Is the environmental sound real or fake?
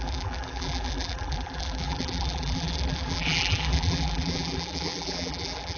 fake